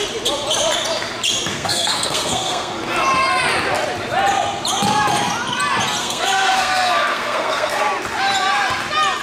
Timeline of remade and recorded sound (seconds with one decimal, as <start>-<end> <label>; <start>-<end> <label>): 0.0-1.5 recorded; 1.5-2.7 remade; 2.7-6.0 recorded; 6.0-7.8 remade; 7.8-9.2 recorded